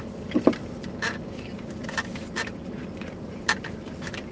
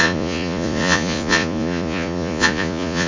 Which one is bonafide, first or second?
first